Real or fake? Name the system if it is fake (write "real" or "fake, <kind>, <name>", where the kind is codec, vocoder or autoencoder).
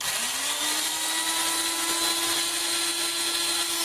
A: real